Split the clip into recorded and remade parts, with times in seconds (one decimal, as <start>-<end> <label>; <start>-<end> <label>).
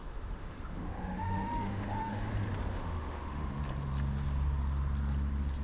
0.0-2.3 remade; 2.3-2.7 recorded; 2.7-3.5 remade; 3.5-5.6 recorded